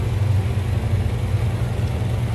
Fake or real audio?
real